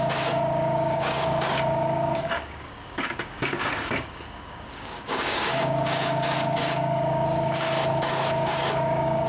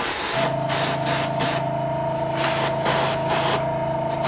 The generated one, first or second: first